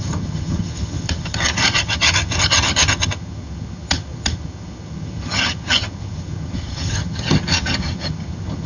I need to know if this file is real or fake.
fake